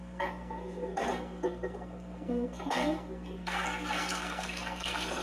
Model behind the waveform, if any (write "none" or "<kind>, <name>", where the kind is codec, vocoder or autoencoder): codec, SNAC